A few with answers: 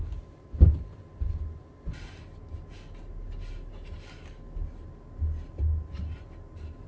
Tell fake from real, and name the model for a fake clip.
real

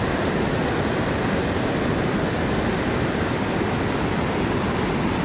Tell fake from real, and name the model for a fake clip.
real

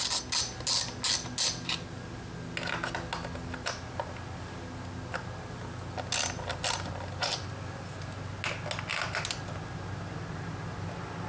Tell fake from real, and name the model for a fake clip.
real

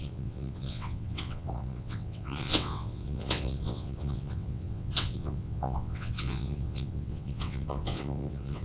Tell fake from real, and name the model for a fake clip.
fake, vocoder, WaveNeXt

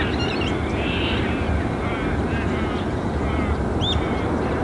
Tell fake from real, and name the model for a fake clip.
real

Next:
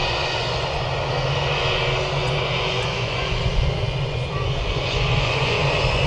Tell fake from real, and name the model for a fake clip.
fake, vocoder, Vocos